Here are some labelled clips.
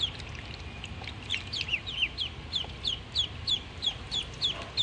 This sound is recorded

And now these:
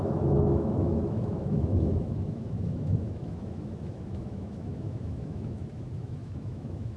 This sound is remade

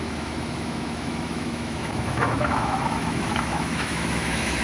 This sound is remade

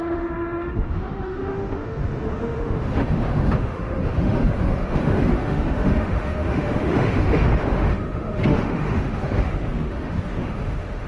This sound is remade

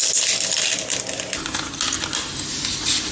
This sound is recorded